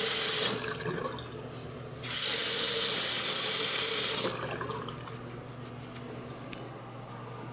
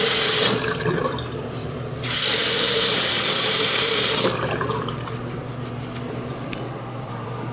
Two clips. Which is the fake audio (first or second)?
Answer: second